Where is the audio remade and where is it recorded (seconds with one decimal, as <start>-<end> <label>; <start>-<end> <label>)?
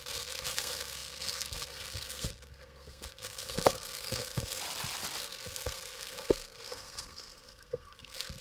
0.0-4.6 remade; 4.6-5.2 recorded; 5.2-8.4 remade